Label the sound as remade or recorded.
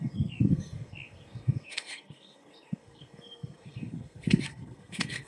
remade